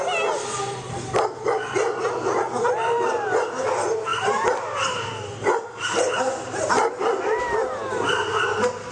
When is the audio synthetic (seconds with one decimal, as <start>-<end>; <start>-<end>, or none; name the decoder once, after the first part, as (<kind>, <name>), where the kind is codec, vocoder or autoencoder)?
4.1-6.9 (vocoder, BigVGAN v2); 7.6-8.3